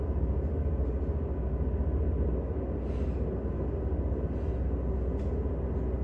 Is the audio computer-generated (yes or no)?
no